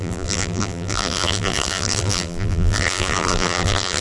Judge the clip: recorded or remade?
remade